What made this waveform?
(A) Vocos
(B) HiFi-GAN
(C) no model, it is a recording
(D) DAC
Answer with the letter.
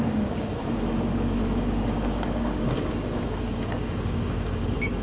D